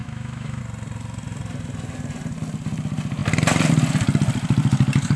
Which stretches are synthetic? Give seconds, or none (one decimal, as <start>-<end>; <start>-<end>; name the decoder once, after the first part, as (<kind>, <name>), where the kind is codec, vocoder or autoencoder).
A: 0.0-0.6 (autoencoder, DAC-VAE)